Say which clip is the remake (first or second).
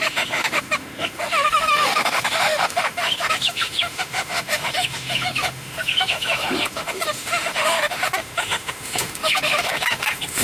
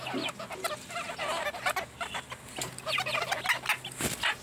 first